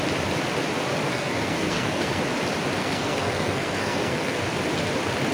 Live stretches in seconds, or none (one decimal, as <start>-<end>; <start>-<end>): 0.0-1.1; 2.2-2.8; 4.4-5.3